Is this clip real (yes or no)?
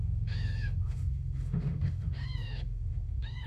no